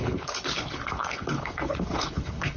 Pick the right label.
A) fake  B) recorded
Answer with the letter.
A